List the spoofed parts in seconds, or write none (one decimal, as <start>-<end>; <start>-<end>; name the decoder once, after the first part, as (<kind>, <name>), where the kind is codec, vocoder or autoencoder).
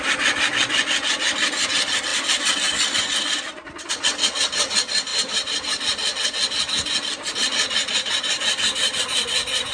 none